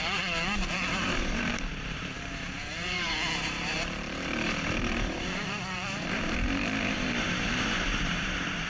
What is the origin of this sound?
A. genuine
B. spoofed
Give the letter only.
B